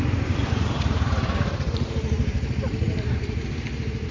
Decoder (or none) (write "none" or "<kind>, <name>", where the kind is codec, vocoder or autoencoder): vocoder, BigVGAN v2